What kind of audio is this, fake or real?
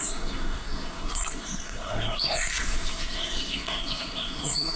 fake